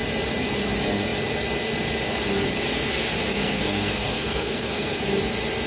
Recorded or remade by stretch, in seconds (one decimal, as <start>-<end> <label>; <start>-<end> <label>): 0.0-3.3 recorded; 3.3-5.0 remade; 5.0-5.7 recorded